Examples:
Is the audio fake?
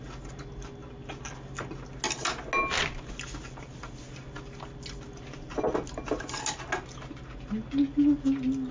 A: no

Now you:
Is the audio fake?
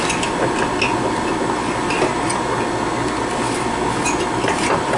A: no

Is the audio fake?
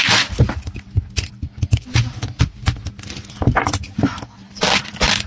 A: yes